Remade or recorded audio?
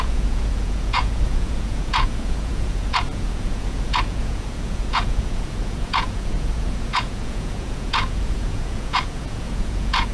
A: remade